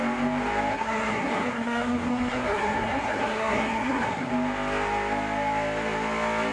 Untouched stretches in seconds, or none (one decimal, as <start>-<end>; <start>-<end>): 0.0-0.7; 4.3-6.5